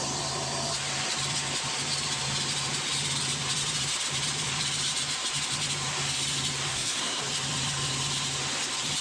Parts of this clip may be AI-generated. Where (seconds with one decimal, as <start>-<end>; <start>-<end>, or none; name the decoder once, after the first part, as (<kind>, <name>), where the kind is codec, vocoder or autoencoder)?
6.7-7.2 (codec, SNAC)